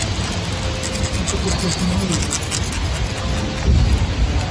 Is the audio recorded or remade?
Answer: recorded